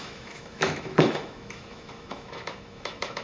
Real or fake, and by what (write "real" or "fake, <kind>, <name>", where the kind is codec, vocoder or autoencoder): fake, autoencoder, DAC-VAE